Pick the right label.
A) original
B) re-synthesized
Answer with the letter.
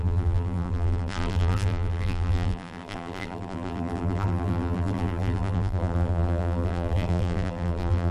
B